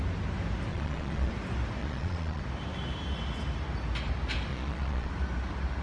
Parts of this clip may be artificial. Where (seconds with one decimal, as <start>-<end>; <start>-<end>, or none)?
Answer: 0.7-1.3; 1.8-2.4; 4.5-5.1